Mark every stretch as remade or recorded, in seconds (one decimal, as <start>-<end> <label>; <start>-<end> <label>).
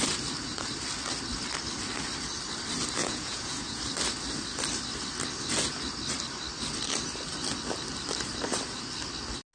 0.0-3.0 recorded; 3.0-3.8 remade; 3.8-9.5 recorded